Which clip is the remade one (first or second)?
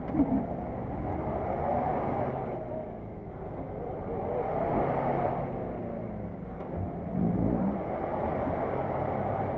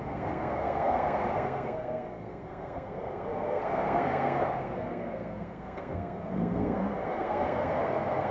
second